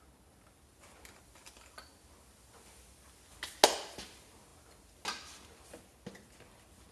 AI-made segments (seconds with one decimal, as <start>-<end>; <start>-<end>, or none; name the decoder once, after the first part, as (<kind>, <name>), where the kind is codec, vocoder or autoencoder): none